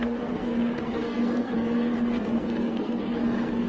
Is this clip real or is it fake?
fake